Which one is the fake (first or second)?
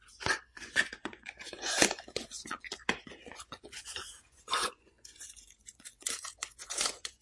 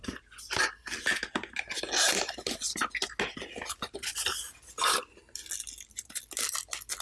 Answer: first